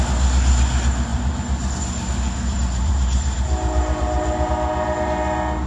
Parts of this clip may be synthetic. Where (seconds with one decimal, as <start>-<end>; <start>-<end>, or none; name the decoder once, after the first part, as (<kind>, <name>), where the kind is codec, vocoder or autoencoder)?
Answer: 1.1-4.5 (vocoder, BigVGAN v2)